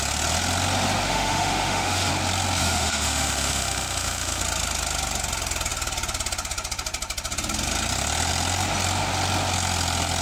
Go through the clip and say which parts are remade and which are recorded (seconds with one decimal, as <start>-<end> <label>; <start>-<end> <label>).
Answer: 0.0-1.1 recorded; 1.1-2.1 remade; 2.1-2.6 recorded; 2.6-4.4 remade; 4.4-10.2 recorded